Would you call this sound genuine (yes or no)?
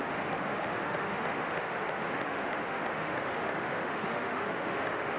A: no